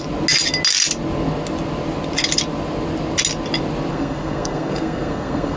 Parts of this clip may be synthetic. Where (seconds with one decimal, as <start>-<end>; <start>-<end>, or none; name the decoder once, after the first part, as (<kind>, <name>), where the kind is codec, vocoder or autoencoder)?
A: 3.9-5.6 (codec, SNAC)